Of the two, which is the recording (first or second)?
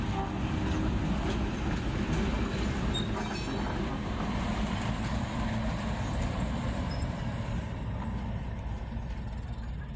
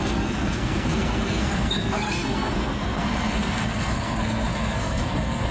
first